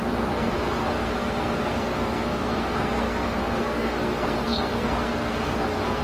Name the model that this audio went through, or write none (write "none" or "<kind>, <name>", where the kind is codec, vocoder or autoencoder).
codec, SNAC